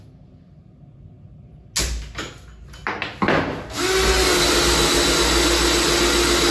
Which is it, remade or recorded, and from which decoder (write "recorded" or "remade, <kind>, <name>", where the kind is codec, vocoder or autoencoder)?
recorded